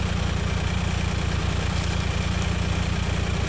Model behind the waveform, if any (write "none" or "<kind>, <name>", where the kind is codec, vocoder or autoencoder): none